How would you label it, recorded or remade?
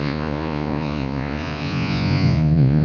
remade